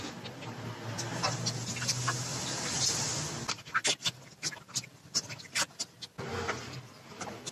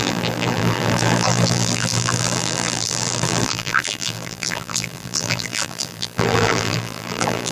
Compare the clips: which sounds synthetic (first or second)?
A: second